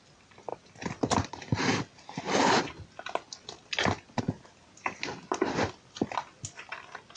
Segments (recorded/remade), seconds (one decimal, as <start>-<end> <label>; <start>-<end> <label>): 0.0-7.2 recorded